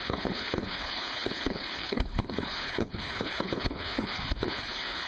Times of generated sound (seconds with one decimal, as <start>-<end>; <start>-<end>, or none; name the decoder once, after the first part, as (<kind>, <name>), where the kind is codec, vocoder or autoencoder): 0.0-5.1 (codec, HILCodec)